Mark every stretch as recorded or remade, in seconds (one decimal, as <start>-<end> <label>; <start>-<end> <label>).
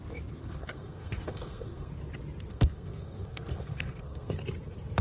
0.0-0.4 recorded; 0.4-1.9 remade; 1.9-2.5 recorded; 2.5-4.4 remade; 4.4-5.0 recorded